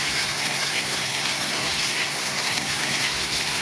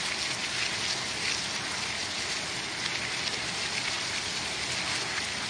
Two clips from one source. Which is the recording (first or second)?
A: second